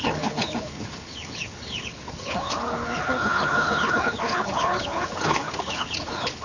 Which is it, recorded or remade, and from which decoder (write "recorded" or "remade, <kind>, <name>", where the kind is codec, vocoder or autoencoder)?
remade, codec, HILCodec